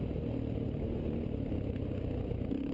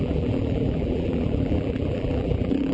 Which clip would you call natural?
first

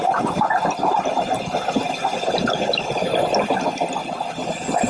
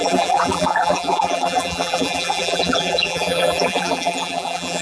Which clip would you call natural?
first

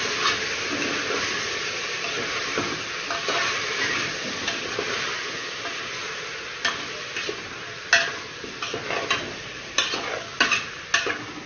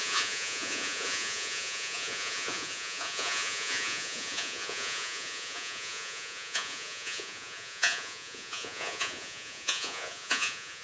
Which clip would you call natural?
first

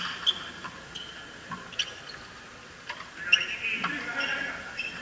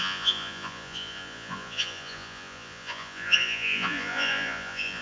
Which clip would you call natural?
first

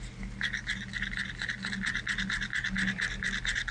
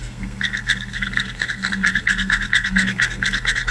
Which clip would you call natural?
first